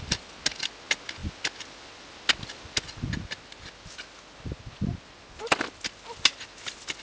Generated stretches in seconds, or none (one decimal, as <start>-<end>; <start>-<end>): none